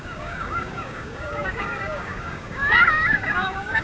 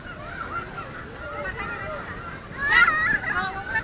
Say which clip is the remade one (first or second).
first